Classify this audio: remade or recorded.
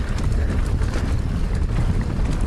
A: recorded